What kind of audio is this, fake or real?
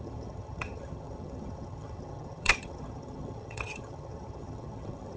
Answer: fake